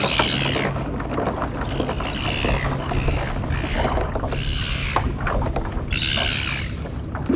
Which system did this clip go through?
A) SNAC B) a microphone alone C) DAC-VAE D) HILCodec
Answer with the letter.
B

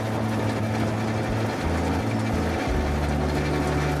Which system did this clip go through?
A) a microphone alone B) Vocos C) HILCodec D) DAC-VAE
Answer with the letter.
A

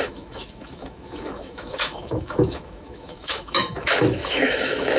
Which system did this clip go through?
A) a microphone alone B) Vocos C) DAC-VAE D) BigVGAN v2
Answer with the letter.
C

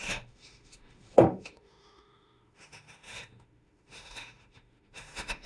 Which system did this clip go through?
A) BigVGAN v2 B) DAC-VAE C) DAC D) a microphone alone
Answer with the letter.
B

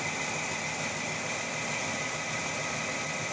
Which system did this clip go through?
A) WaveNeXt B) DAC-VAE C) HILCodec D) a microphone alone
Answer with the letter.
D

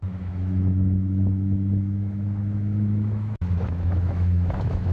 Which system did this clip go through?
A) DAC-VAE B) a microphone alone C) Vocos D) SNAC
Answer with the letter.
A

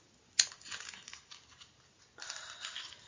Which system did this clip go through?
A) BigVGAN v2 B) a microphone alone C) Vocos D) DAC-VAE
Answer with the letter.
B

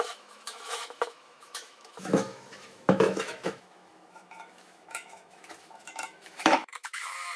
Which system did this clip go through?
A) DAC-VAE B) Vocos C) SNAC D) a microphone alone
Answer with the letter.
A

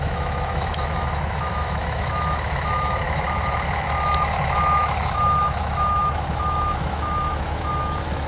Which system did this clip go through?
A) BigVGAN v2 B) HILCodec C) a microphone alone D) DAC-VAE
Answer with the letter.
D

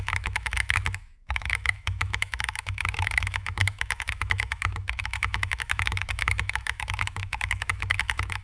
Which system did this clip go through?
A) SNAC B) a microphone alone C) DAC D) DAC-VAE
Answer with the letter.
D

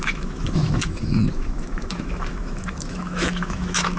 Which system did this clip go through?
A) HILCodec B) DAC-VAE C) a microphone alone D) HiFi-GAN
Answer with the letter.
B